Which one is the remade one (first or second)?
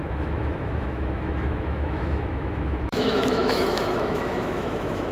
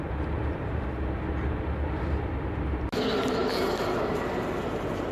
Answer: first